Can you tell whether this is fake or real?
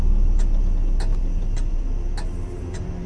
real